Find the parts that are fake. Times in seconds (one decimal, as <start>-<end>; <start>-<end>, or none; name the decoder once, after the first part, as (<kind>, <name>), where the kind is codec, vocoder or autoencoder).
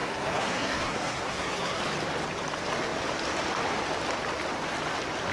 0.0-1.8 (codec, SNAC)